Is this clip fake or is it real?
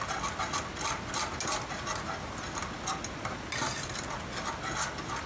real